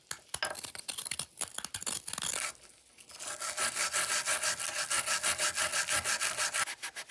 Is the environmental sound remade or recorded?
recorded